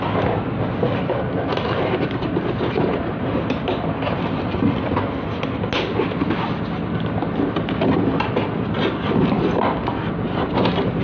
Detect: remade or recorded recorded